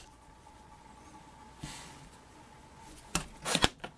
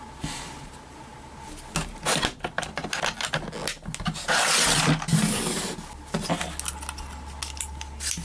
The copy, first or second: first